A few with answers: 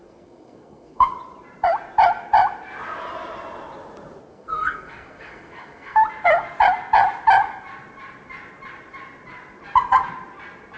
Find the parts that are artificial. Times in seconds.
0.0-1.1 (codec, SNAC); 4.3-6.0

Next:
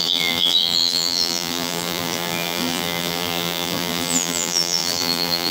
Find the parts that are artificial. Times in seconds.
0.0-5.5 (vocoder, BigVGAN v2)